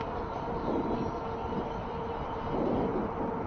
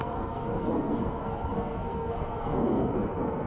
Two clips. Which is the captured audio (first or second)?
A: first